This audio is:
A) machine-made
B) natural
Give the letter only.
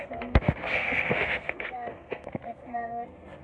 A